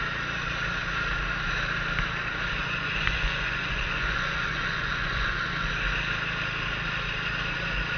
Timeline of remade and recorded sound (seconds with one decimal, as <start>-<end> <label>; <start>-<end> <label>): 0.0-2.6 recorded; 2.6-5.7 remade; 5.7-8.0 recorded

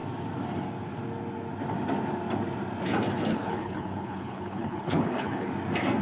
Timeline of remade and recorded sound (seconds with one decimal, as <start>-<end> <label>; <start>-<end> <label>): 0.0-3.3 recorded; 3.3-5.5 remade; 5.5-6.0 recorded

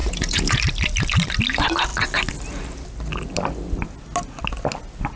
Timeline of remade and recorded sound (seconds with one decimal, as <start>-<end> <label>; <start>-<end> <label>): 0.0-0.6 remade; 0.6-5.2 recorded

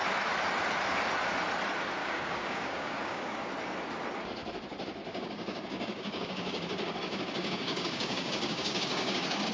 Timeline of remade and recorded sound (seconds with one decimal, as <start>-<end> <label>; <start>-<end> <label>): 0.0-2.0 recorded; 2.0-3.5 remade; 3.5-5.0 recorded; 5.0-9.5 remade

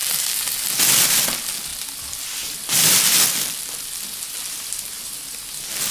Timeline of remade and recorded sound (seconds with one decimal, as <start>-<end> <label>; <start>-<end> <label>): 0.0-5.9 recorded

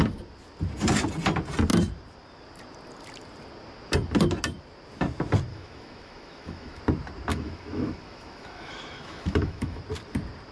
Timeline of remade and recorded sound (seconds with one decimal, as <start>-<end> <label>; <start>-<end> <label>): 0.0-5.5 recorded; 5.5-6.8 remade; 6.8-7.3 recorded; 7.3-9.8 remade; 9.8-10.5 recorded

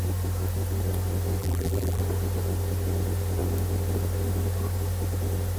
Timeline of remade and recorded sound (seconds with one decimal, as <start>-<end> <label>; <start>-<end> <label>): 0.0-1.4 recorded; 1.4-2.0 remade; 2.0-5.6 recorded